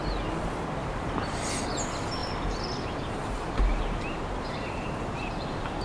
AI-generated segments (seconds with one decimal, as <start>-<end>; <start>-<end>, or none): 0.8-1.7; 2.2-5.8